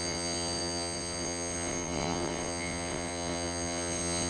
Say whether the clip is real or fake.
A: fake